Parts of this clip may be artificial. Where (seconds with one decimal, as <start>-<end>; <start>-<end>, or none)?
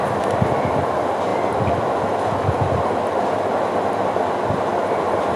none